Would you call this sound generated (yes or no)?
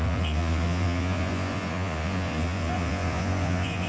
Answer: yes